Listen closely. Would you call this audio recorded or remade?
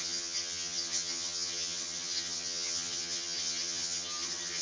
remade